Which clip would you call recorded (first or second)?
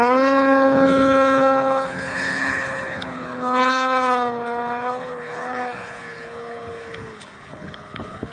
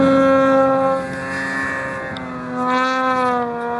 second